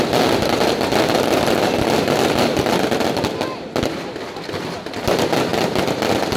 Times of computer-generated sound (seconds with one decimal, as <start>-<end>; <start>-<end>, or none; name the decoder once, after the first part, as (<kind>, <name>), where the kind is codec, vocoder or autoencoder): none